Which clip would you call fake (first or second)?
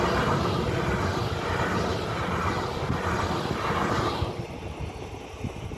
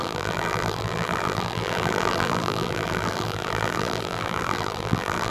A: second